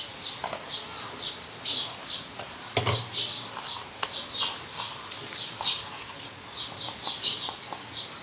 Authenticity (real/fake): real